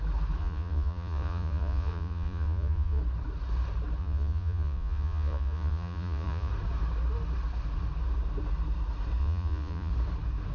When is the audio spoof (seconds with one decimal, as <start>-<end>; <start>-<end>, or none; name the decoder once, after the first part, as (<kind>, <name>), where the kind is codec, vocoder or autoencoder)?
0.4-3.0 (vocoder, Vocos); 4.0-6.5; 9.2-9.9